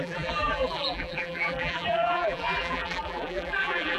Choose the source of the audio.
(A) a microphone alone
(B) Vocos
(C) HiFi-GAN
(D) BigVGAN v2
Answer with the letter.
D